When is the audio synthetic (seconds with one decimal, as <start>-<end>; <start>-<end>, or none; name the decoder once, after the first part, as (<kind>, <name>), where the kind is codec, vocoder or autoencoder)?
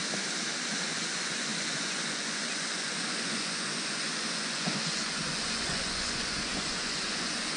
0.7-7.6 (vocoder, Vocos)